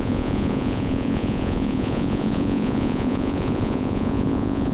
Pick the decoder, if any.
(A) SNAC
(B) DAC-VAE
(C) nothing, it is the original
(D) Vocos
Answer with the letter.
D